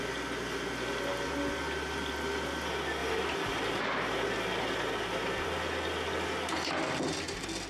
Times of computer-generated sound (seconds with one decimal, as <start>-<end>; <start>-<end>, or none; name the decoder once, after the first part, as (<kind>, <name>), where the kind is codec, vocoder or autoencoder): 3.0-3.8 (vocoder, BigVGAN v2)